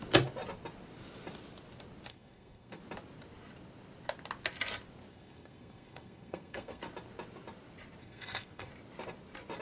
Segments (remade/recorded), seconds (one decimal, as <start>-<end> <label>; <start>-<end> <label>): 0.0-2.1 recorded; 2.1-2.8 remade; 2.8-5.1 recorded; 5.1-6.8 remade; 6.8-8.0 recorded; 8.0-8.7 remade; 8.7-9.6 recorded